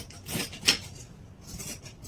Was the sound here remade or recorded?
recorded